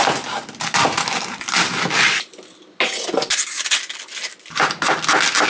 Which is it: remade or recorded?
recorded